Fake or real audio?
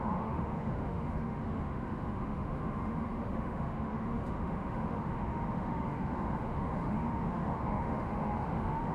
fake